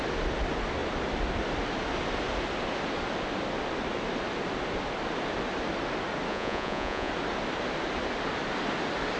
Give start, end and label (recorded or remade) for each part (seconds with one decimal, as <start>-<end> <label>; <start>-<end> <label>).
0.0-6.3 recorded; 6.3-7.1 remade; 7.1-9.2 recorded